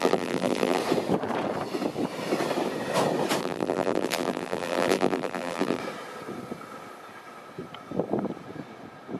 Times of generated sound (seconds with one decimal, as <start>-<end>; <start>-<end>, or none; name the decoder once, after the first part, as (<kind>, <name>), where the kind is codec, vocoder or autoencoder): 0.0-0.8 (vocoder, BigVGAN v2); 3.4-5.8